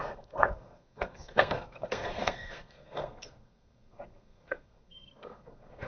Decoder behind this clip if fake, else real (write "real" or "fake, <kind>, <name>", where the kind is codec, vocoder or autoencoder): fake, codec, SNAC